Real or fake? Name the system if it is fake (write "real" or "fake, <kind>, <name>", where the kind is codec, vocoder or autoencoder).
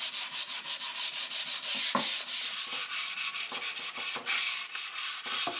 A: fake, vocoder, BigVGAN v2